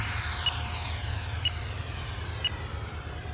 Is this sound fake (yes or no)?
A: no